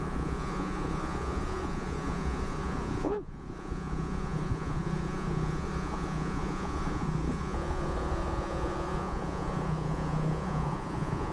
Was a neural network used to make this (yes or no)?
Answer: yes